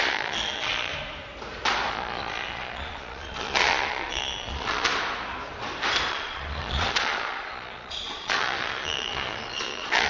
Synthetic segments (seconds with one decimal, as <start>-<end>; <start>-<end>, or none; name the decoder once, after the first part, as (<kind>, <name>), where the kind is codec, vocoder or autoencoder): 0.0-0.9 (vocoder, Vocos); 1.9-4.9; 6.1-10.1